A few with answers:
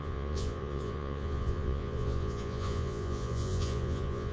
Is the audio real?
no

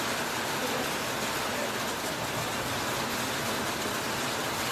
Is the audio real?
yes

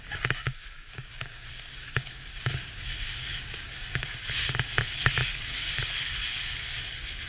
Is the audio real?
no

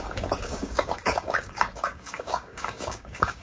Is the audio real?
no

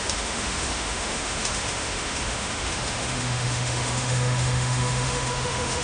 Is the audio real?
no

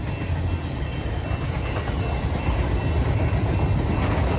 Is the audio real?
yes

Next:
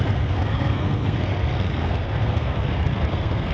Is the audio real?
no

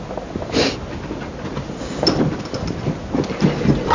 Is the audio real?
yes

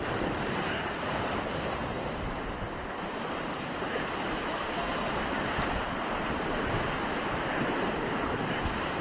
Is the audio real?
yes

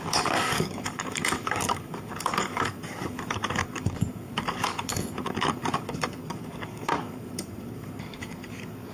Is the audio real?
no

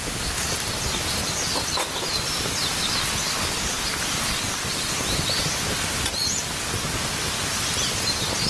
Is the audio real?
yes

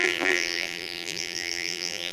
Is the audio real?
no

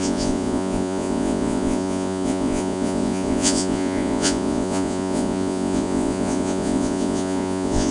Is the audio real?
no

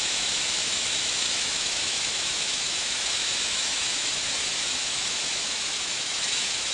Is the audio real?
no